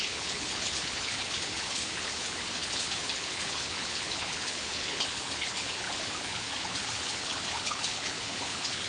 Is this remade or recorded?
remade